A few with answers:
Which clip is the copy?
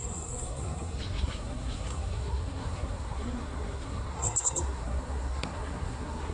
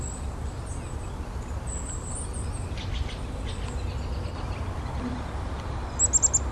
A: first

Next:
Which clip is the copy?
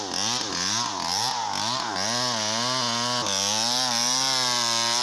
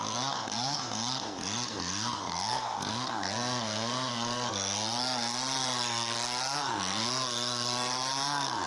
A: second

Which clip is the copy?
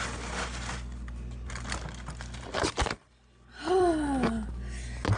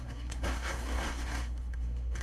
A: second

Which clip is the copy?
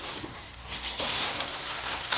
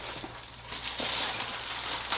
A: first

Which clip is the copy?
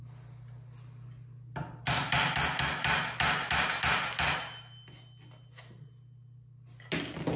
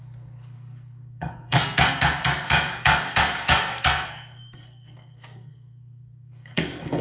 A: second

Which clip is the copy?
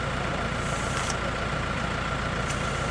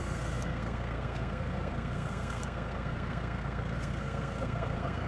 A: second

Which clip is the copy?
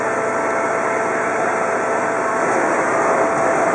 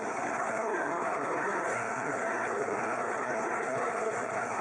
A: second